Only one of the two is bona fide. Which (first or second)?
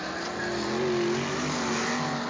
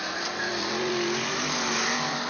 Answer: first